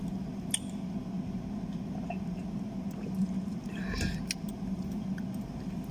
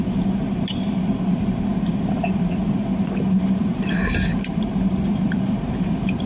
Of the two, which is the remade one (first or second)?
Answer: second